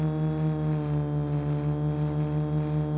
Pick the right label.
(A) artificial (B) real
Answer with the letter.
B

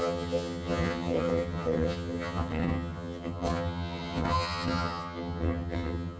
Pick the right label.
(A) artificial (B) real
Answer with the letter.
A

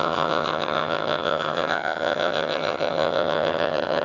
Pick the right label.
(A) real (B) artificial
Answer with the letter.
B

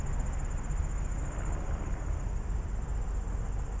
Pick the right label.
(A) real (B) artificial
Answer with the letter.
A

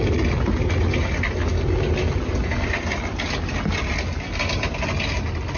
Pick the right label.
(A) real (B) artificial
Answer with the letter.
A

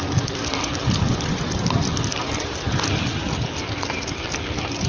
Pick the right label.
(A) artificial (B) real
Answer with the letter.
B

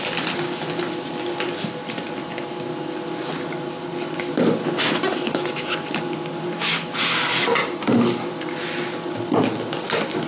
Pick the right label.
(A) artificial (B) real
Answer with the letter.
B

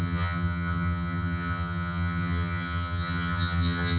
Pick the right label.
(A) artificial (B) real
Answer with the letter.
A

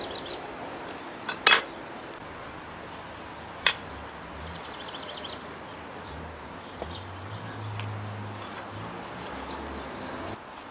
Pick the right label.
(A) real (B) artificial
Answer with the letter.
A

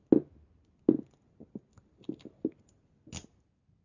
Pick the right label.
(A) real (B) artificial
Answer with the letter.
A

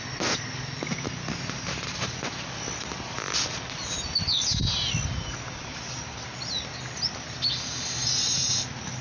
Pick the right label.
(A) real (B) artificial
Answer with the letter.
A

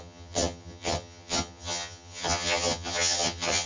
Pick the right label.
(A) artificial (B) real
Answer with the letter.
A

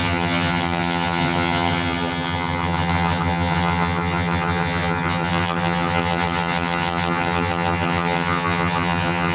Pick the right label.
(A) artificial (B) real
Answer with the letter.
A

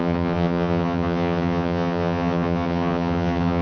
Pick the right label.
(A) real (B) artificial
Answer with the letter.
B